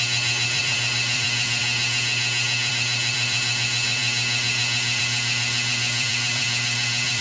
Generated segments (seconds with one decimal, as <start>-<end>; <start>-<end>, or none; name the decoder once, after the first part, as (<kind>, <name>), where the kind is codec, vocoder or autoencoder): 0.0-1.6 (vocoder, BigVGAN v2); 2.7-4.0; 5.0-7.2